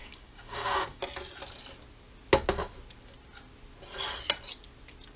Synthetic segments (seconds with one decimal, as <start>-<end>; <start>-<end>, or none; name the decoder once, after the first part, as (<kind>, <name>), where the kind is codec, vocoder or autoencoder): 0.0-1.0 (codec, DAC)